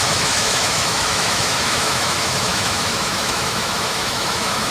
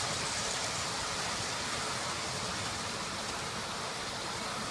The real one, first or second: second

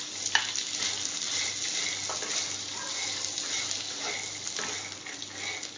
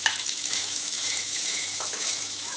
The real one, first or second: first